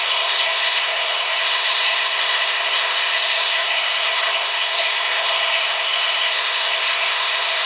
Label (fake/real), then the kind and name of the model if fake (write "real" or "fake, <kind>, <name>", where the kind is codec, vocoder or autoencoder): fake, codec, SNAC